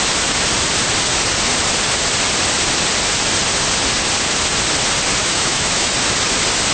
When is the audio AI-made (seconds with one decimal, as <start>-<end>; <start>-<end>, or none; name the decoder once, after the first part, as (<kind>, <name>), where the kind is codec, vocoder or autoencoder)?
5.2-5.9 (autoencoder, DAC-VAE)